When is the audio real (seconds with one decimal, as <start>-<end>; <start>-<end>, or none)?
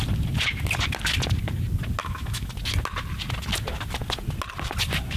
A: 0.0-2.0; 2.5-5.2